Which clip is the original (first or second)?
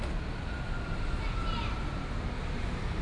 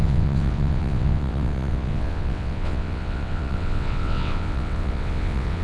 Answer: first